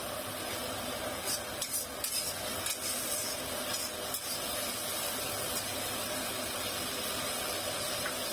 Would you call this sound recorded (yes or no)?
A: yes